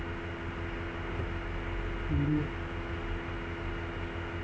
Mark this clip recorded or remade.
recorded